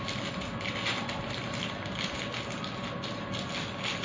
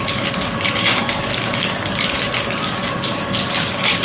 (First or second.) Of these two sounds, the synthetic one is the second